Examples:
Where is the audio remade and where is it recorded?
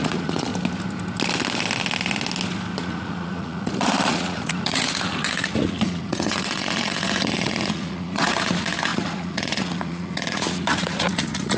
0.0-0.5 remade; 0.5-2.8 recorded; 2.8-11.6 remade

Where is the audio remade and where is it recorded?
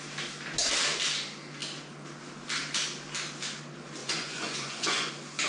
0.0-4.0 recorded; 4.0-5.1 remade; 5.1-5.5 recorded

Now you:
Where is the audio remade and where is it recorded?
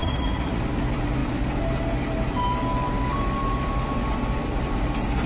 0.0-0.6 remade; 0.6-5.3 recorded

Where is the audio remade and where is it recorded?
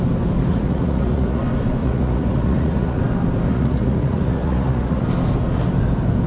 0.0-0.5 recorded; 0.5-1.4 remade; 1.4-1.8 recorded; 1.8-3.0 remade; 3.0-3.5 recorded; 3.5-5.0 remade; 5.0-6.3 recorded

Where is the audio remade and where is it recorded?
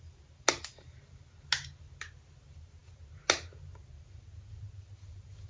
0.0-5.5 recorded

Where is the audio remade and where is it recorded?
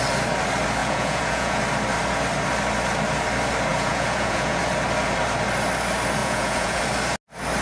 0.0-0.8 recorded; 0.8-1.6 remade; 1.6-3.7 recorded; 3.7-4.6 remade; 4.6-6.2 recorded; 6.2-6.8 remade; 6.8-7.6 recorded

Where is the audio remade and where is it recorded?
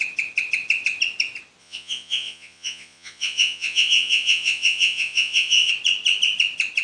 0.0-1.6 recorded; 1.6-5.7 remade; 5.7-6.8 recorded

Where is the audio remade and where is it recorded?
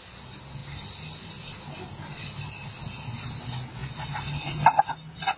0.0-5.4 recorded